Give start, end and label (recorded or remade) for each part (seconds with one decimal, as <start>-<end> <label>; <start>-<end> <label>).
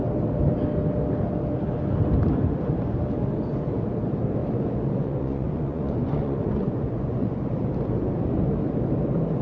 0.0-4.4 recorded; 4.4-7.5 remade; 7.5-9.4 recorded